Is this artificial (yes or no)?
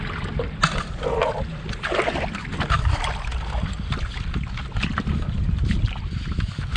no